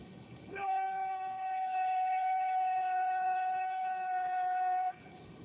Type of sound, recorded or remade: remade